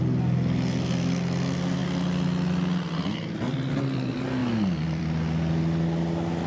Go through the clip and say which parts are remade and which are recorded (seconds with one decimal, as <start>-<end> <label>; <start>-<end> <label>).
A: 0.0-6.5 recorded